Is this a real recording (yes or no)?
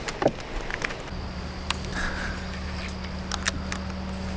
yes